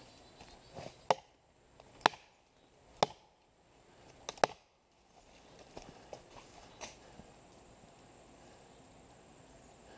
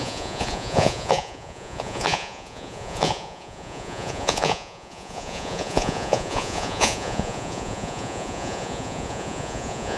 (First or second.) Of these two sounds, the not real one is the second